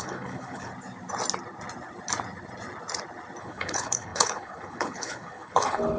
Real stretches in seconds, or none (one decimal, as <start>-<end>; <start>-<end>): 0.7-3.4